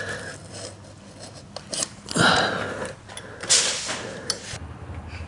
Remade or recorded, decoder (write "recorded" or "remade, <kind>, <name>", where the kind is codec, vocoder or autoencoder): recorded